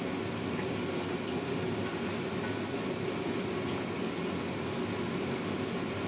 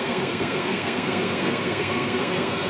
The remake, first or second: second